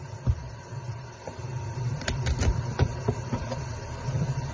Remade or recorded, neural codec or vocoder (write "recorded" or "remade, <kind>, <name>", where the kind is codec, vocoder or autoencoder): remade, vocoder, BigVGAN v2